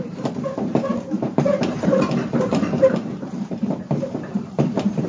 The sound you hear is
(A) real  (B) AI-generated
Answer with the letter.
B